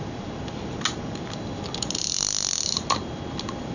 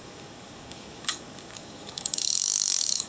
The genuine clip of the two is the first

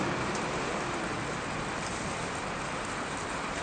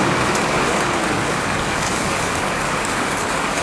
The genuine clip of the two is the first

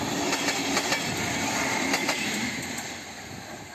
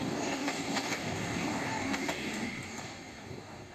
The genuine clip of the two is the first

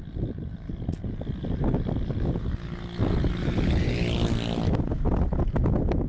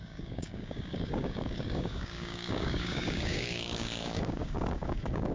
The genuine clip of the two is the first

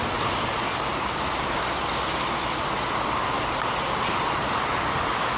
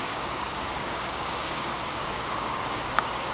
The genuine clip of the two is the first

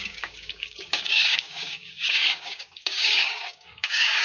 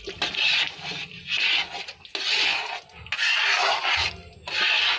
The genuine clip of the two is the second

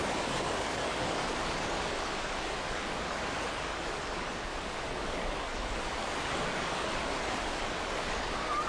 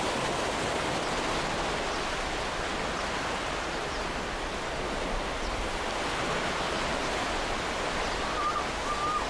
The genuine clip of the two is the second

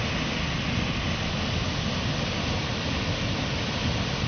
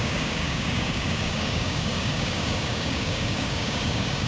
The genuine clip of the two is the first